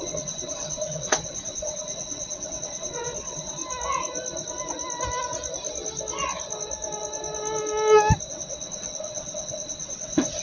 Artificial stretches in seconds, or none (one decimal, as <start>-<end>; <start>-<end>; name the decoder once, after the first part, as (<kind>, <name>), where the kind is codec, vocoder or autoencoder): 0.0-3.6 (vocoder, WaveNeXt); 8.3-10.4